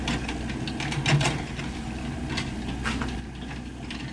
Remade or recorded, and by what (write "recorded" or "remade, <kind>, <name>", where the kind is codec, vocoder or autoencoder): recorded